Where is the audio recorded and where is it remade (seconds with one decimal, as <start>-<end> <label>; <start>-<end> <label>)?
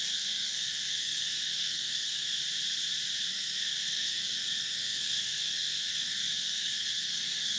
0.0-2.4 remade; 2.4-3.3 recorded; 3.3-7.6 remade